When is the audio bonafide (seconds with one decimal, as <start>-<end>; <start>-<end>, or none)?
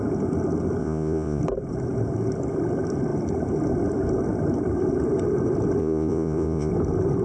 0.0-0.8; 1.4-5.8; 6.7-7.2